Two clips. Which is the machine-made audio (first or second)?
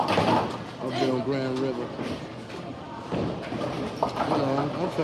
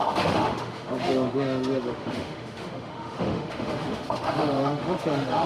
second